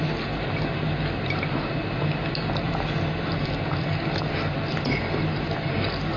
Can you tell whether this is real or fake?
real